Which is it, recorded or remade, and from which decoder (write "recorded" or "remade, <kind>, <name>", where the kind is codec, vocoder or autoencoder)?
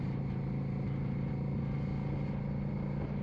recorded